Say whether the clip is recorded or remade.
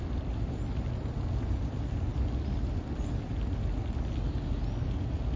recorded